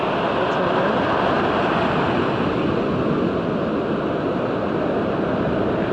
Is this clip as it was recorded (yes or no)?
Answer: yes